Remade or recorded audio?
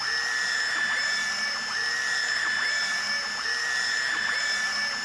recorded